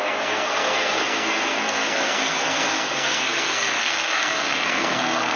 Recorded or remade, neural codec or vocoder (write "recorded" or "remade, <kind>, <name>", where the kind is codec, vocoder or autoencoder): remade, codec, SNAC